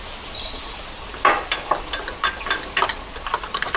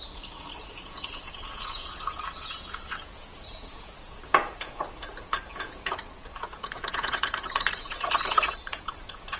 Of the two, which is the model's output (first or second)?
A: second